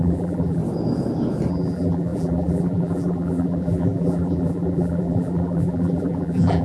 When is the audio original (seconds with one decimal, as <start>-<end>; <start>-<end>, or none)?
0.6-1.5